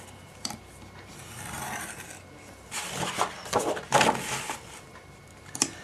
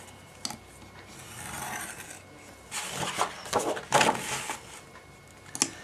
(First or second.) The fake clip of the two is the first